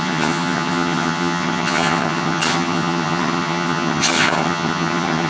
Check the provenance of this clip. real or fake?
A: fake